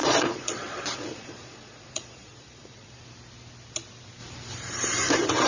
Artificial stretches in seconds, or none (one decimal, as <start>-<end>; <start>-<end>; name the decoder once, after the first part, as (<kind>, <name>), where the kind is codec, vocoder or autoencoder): 0.0-3.0 (vocoder, Vocos)